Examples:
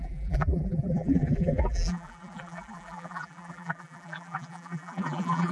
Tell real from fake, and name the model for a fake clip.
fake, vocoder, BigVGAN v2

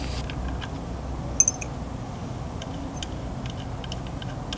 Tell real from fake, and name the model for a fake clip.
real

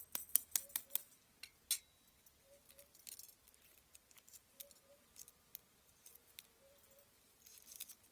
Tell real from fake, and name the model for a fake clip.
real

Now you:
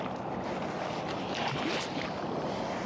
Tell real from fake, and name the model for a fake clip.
real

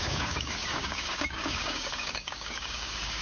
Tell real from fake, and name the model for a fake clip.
fake, codec, DAC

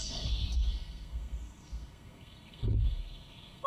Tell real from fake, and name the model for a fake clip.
fake, codec, SNAC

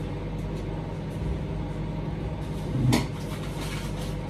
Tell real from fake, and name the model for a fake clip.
real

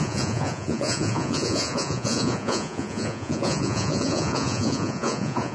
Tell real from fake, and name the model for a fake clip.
fake, vocoder, Vocos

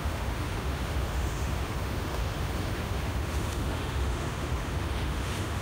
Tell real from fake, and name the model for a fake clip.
fake, autoencoder, DAC-VAE